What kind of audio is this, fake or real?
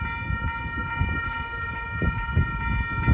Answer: real